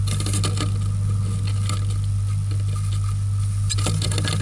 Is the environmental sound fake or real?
real